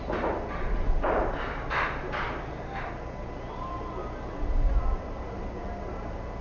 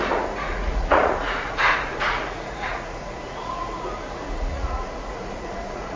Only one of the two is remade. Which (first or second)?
second